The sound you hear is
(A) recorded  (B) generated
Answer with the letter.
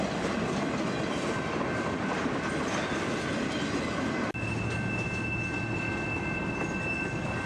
A